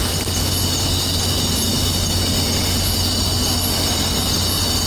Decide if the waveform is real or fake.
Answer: real